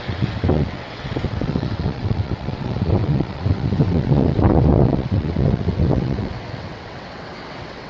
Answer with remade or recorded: remade